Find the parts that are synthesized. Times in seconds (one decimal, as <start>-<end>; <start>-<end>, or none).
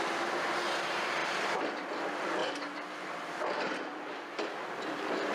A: 2.4-5.3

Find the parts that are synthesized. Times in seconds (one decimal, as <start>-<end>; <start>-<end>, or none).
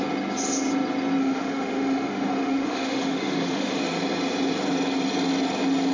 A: 1.2-3.8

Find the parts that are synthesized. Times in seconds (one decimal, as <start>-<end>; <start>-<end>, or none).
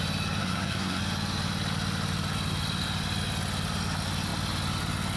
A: 0.4-1.0